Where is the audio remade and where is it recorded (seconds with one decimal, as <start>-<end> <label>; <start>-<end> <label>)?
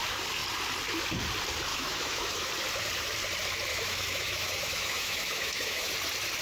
0.0-1.7 recorded; 1.7-2.5 remade; 2.5-3.7 recorded; 3.7-5.9 remade; 5.9-6.4 recorded